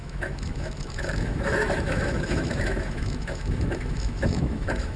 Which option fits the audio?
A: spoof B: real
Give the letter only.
A